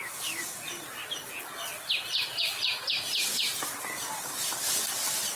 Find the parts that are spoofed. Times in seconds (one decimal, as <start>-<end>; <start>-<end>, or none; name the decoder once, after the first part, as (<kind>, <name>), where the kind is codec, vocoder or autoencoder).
0.0-5.4 (vocoder, BigVGAN v2)